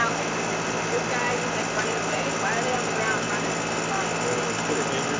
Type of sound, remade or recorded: recorded